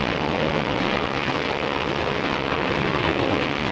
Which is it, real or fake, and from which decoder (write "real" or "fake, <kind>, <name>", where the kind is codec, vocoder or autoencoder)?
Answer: fake, vocoder, WaveNeXt